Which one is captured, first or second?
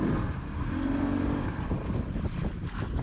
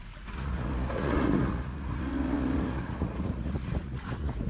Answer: first